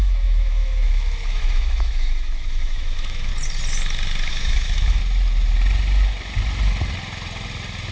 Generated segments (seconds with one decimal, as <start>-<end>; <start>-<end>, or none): 0.0-3.3; 4.3-5.0

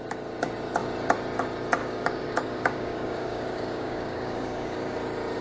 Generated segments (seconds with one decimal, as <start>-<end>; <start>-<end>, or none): 1.8-5.0